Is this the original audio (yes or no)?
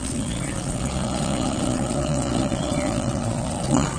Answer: no